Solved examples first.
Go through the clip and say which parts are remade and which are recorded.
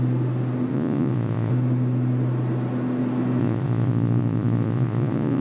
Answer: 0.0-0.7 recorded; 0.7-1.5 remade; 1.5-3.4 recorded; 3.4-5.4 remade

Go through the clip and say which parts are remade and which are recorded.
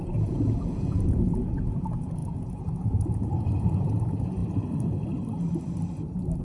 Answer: 0.0-4.4 remade; 4.4-6.4 recorded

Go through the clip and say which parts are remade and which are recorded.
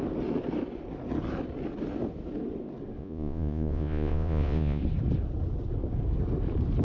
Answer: 0.0-3.0 recorded; 3.0-4.8 remade; 4.8-6.8 recorded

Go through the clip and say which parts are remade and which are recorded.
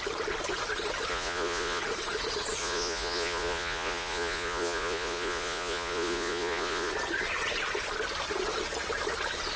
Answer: 0.0-1.1 recorded; 1.1-1.8 remade; 1.8-2.6 recorded; 2.6-6.9 remade; 6.9-9.6 recorded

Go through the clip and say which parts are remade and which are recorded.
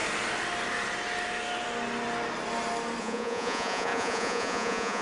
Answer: 0.0-3.0 recorded; 3.0-5.0 remade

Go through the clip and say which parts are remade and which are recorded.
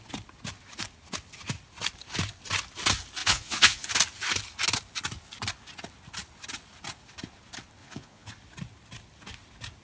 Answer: 0.0-3.2 recorded; 3.2-3.9 remade; 3.9-7.8 recorded; 7.8-8.3 remade; 8.3-9.8 recorded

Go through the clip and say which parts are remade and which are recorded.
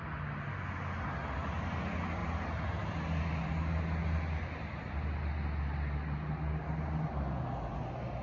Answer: 0.0-8.2 recorded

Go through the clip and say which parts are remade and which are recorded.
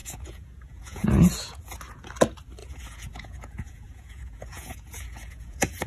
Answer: 0.0-1.6 remade; 1.6-2.6 recorded; 2.6-5.9 remade